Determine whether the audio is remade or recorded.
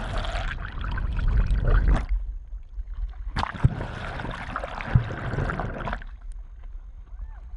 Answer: recorded